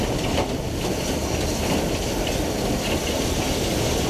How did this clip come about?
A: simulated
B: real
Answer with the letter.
B